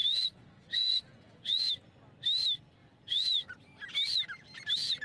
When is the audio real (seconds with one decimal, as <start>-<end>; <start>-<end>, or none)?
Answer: 1.7-2.8; 3.6-5.0

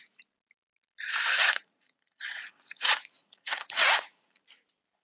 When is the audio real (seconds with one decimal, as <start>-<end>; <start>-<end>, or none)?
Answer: 0.0-1.4; 4.4-5.0